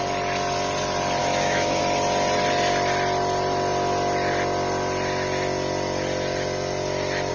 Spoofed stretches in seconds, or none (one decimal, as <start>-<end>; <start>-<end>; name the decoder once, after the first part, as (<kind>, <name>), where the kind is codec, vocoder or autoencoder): 1.2-1.8 (autoencoder, DAC-VAE)